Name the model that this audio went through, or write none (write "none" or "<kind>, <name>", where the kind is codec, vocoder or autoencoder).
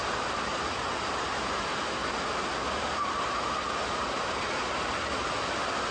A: none